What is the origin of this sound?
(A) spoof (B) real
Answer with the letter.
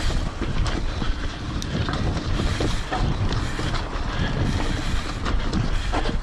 B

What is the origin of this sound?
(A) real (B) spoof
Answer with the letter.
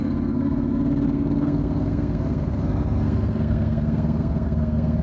B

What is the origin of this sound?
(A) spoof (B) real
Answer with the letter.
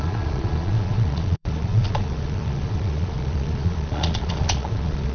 A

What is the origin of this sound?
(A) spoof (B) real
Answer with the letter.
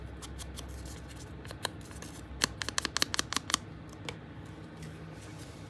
B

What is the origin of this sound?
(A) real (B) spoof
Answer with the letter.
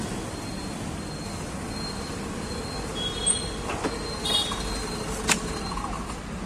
A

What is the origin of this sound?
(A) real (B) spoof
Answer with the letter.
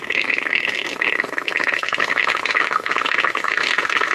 B